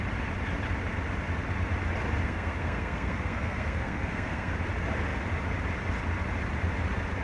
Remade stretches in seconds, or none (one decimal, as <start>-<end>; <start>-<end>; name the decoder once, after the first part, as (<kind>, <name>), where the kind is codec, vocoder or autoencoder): 2.2-4.5 (codec, SNAC)